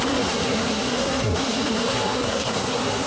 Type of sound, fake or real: fake